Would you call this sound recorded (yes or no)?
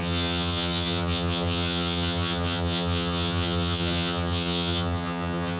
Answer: no